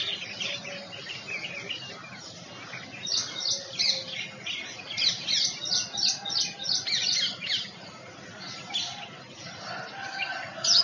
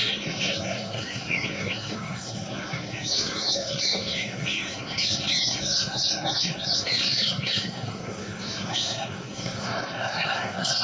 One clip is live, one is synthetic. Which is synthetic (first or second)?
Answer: second